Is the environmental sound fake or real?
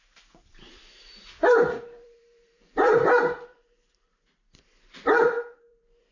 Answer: fake